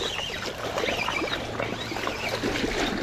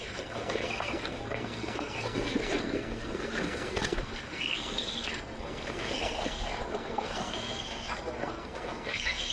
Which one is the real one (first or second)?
first